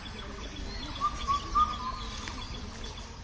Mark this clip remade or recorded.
recorded